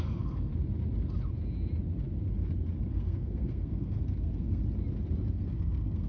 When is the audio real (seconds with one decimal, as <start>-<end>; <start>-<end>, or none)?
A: 0.5-2.9; 4.6-5.3